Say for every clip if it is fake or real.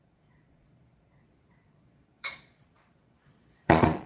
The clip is fake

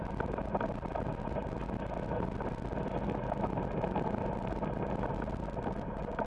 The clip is real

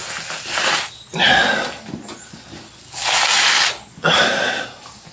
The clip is real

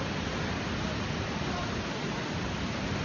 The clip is real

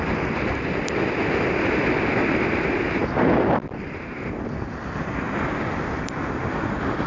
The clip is real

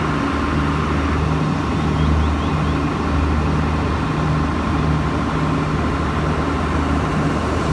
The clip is real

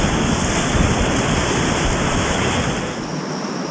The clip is real